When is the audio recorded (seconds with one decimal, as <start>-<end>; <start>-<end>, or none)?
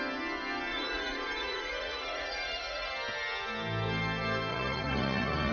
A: 0.0-0.7; 2.9-4.5